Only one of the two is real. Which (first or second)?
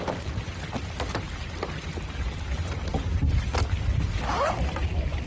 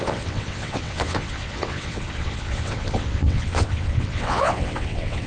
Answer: first